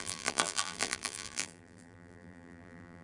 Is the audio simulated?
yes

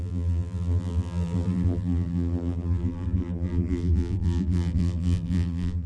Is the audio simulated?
yes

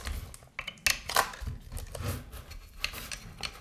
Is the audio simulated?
no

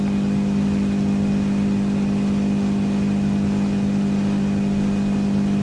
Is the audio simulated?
no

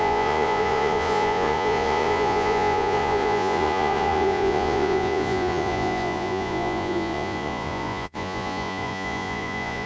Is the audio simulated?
yes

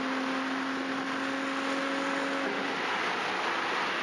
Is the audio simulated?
no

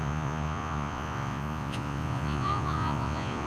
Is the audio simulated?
yes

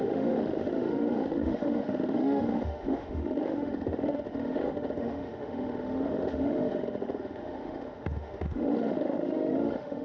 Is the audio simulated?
yes